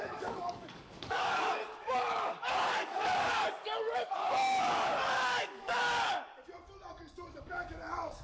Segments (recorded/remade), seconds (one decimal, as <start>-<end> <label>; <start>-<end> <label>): 0.0-6.3 remade; 6.3-6.9 recorded; 6.9-8.2 remade